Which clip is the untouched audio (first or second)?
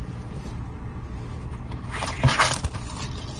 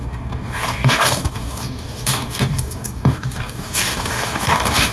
first